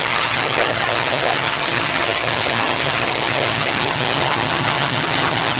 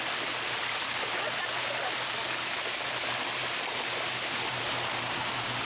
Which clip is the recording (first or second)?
second